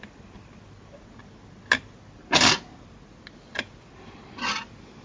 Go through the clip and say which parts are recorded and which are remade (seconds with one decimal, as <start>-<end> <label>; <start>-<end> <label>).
0.0-5.0 recorded